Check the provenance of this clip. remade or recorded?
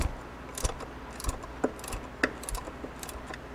recorded